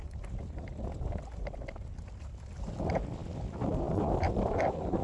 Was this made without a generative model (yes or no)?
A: yes